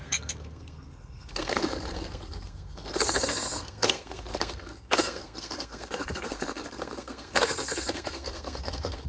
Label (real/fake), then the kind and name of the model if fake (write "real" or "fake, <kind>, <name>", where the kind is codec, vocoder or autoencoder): fake, codec, SNAC